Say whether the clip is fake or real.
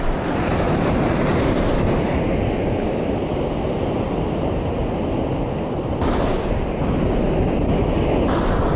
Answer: real